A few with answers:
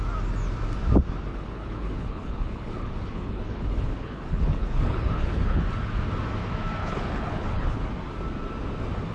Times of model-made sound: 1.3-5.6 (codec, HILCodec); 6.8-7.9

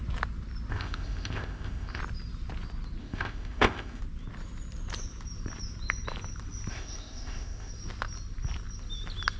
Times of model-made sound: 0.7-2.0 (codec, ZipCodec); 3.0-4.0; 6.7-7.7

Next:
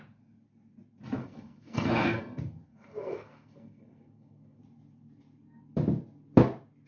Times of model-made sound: 1.2-2.2 (codec, SNAC); 2.7-4.6

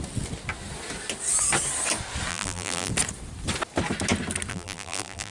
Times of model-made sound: 2.3-2.9 (vocoder, BigVGAN v2); 4.5-5.3